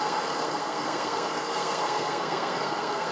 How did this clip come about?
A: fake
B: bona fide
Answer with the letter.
A